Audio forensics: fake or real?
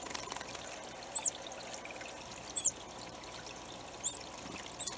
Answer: real